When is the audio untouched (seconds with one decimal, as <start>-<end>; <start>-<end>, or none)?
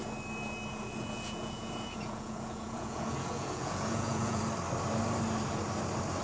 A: 0.0-0.7; 4.4-6.2